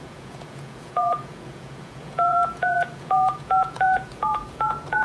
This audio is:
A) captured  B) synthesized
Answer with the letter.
B